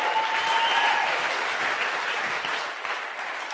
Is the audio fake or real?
real